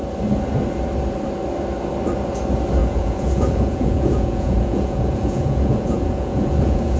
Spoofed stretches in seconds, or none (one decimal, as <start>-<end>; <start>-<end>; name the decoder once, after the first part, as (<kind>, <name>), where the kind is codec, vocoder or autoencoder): 2.8-7.0 (vocoder, Vocos)